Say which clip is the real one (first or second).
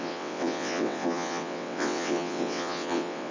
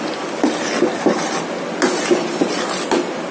second